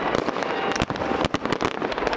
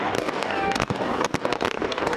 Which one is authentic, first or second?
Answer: first